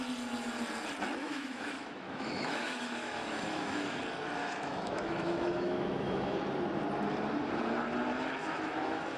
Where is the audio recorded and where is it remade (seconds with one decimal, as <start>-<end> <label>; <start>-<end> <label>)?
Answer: 0.0-1.2 recorded; 1.2-4.0 remade; 4.0-4.4 recorded; 4.4-6.4 remade; 6.4-8.4 recorded; 8.4-9.2 remade